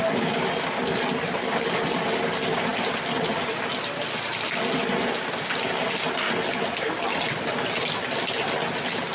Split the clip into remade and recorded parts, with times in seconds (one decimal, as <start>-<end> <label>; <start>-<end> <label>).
0.0-9.1 recorded